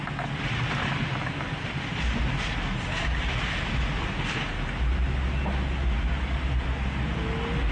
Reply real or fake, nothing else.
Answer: real